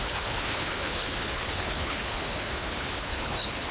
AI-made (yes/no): yes